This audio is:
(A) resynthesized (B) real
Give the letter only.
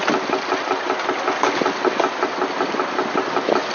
B